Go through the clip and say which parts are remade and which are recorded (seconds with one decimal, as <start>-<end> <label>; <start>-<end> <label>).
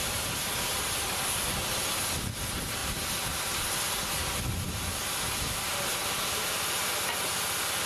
0.0-7.9 recorded